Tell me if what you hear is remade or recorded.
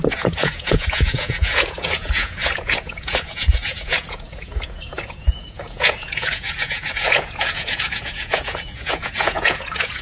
remade